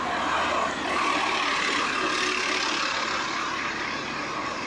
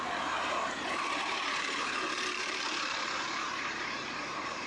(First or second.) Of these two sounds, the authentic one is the first